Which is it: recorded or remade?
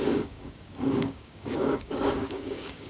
remade